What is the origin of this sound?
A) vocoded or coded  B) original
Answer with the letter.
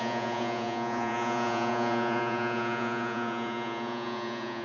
A